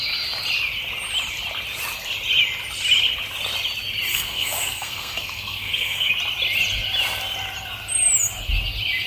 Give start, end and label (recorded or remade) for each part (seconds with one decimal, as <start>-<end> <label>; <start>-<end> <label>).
0.0-4.1 recorded; 4.1-6.1 remade; 6.1-9.1 recorded